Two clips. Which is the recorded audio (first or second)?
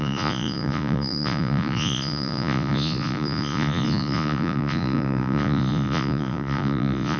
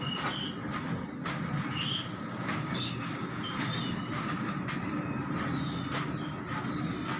second